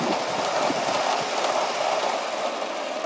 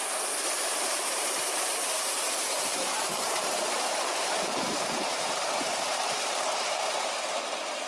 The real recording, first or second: first